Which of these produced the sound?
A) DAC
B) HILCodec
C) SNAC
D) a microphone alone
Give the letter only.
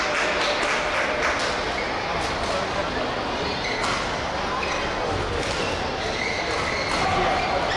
D